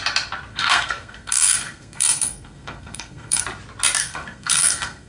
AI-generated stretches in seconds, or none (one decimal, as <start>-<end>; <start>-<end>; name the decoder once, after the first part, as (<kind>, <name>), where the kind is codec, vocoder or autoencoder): 0.5-3.4 (codec, SNAC); 4.0-5.1